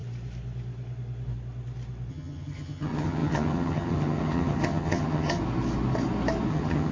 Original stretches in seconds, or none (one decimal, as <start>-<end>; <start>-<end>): 0.0-2.1; 5.4-6.5